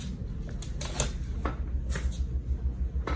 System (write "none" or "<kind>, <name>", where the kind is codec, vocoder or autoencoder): none